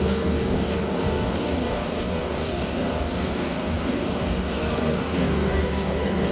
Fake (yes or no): yes